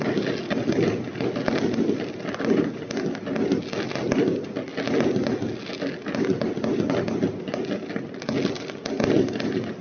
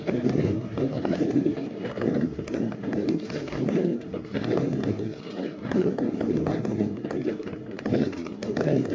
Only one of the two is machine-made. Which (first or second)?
second